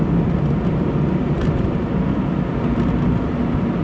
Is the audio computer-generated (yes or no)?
yes